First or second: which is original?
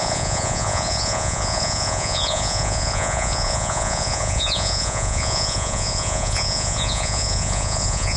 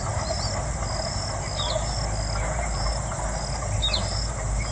second